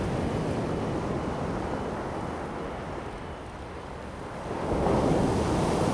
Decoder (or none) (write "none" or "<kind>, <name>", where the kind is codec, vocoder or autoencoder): none